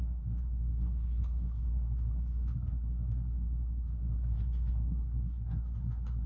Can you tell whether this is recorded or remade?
remade